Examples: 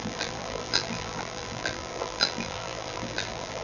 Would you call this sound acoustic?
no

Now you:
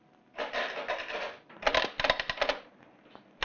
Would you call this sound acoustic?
yes